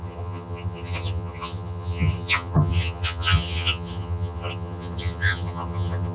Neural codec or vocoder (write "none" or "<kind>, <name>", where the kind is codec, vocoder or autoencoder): vocoder, HiFi-GAN